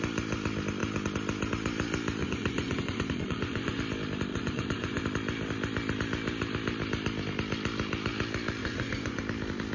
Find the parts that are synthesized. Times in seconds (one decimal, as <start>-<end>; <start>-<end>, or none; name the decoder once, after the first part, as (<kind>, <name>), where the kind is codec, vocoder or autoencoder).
2.2-3.8 (vocoder, Vocos); 4.3-5.0; 8.6-9.2